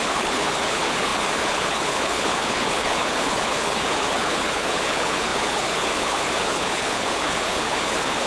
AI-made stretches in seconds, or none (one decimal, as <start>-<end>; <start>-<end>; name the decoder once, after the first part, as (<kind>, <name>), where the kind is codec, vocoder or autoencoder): 0.0-8.3 (codec, HILCodec)